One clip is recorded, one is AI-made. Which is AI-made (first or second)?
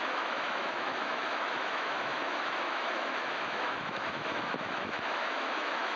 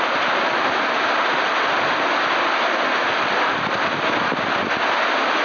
first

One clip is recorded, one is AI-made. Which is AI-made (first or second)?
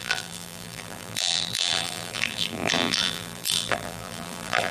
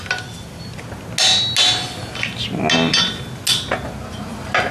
first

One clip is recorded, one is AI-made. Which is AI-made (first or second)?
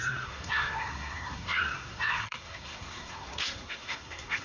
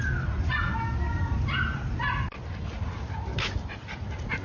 first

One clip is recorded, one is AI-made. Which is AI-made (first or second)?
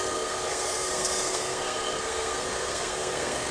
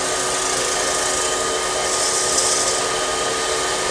first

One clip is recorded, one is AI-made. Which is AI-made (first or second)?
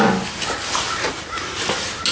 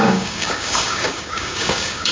second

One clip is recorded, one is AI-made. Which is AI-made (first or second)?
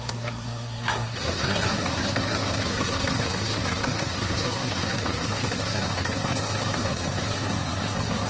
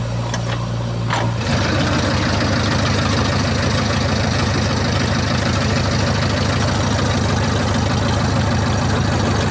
first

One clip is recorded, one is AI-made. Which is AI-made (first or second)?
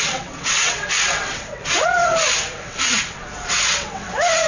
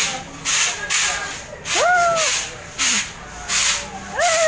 first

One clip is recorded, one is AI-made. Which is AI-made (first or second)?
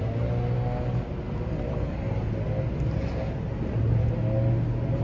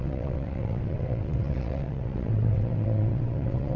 second